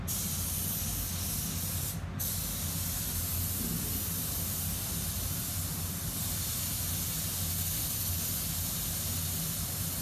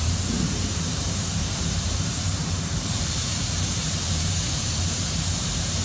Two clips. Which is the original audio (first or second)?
first